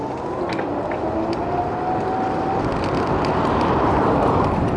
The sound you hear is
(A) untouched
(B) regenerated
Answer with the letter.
A